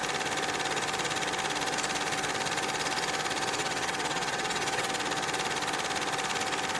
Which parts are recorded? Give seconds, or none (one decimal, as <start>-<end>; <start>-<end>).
0.0-3.6; 4.9-6.8